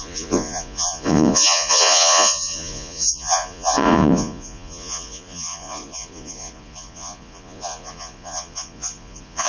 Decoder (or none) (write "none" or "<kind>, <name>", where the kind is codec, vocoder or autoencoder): vocoder, Vocos